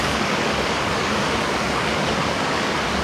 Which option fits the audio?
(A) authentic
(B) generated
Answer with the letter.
B